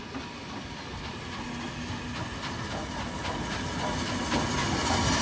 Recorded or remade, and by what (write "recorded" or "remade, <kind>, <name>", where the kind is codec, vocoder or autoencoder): recorded